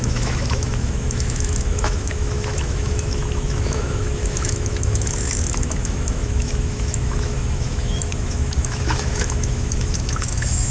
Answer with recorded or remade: remade